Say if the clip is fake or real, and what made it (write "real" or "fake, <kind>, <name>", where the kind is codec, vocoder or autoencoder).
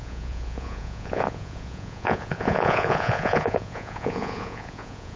fake, vocoder, Vocos